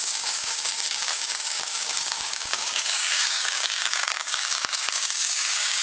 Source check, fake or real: fake